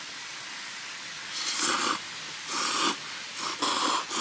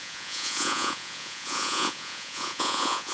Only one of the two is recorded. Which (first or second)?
first